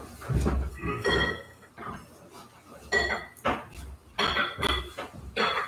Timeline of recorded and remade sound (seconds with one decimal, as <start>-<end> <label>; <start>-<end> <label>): 0.0-0.7 recorded; 0.7-1.7 remade; 1.7-5.7 recorded